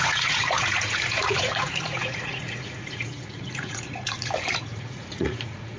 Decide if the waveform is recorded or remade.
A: remade